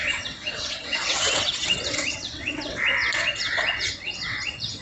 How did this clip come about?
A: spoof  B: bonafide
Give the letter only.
A